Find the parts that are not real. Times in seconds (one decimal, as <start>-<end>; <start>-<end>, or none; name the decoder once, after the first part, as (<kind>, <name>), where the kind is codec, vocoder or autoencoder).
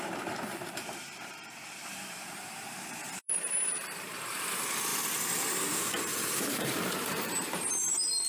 0.0-4.9 (vocoder, BigVGAN v2); 5.7-8.3